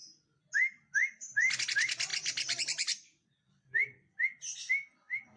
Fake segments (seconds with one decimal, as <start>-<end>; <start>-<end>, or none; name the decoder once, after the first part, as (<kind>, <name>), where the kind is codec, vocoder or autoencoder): none